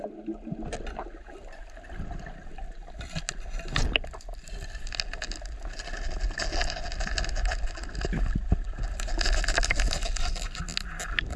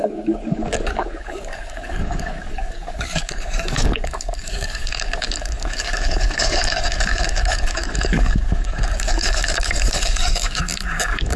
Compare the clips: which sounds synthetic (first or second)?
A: second